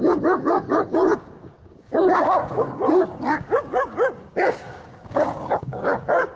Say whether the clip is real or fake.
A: fake